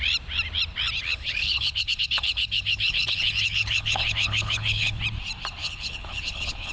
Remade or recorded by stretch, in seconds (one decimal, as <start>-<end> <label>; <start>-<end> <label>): 0.0-1.0 recorded; 1.0-5.0 remade; 5.0-5.6 recorded; 5.6-6.7 remade